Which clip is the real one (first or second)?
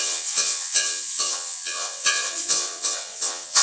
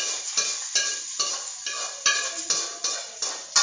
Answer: second